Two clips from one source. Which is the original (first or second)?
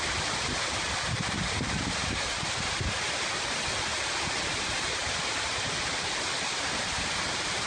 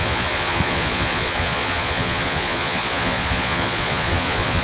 first